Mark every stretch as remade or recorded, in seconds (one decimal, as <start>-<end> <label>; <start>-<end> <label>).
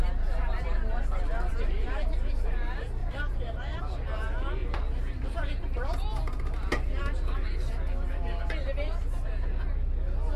0.0-1.5 recorded; 1.5-2.1 remade; 2.1-3.0 recorded; 3.0-3.8 remade; 3.8-4.6 recorded; 4.6-7.0 remade; 7.0-10.4 recorded